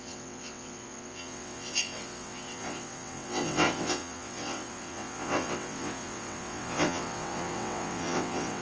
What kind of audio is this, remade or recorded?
remade